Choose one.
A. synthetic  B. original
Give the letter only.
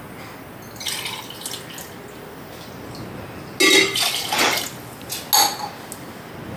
B